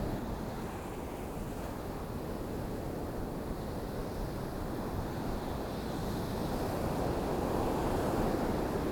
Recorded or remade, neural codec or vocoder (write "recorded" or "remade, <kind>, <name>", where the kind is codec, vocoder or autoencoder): recorded